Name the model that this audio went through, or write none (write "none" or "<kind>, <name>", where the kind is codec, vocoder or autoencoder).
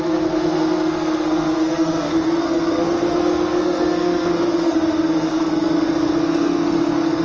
codec, SNAC